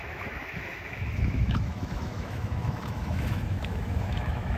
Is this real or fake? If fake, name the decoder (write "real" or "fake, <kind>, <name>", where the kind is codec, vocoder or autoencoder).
fake, autoencoder, DAC-VAE